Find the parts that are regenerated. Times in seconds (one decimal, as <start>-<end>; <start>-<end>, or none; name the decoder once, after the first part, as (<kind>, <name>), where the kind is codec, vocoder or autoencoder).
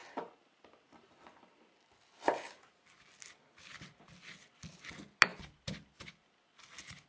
none